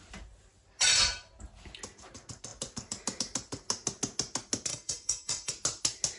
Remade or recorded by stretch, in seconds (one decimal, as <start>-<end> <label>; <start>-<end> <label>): 0.0-4.7 recorded; 4.7-5.5 remade; 5.5-6.2 recorded